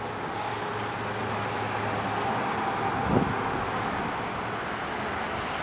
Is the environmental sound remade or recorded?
recorded